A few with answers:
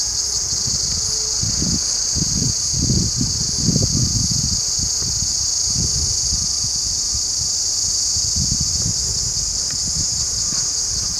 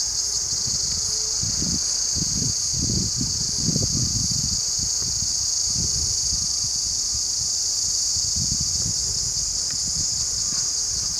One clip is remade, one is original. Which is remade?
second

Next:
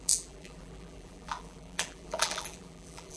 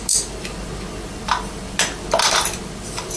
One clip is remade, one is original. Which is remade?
first